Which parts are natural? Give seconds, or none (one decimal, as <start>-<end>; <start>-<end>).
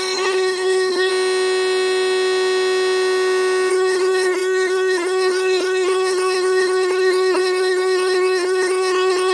1.1-3.7